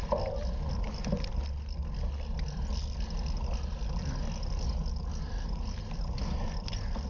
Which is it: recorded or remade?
recorded